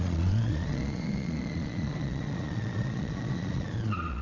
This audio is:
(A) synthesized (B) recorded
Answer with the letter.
A